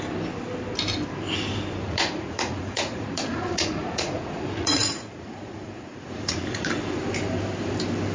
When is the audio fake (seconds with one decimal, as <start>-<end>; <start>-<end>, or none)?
1.8-6.7